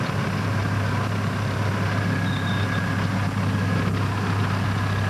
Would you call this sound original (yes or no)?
yes